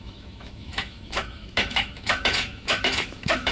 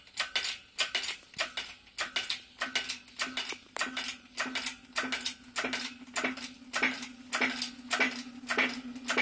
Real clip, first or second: second